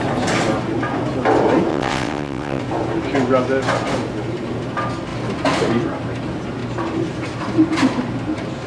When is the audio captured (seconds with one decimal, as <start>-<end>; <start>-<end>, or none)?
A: 0.0-1.7; 2.6-8.7